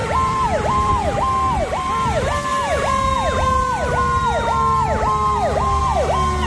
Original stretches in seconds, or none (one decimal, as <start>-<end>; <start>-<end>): 0.9-6.5